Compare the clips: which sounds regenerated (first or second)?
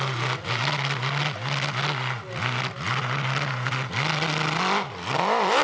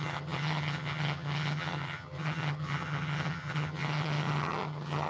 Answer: second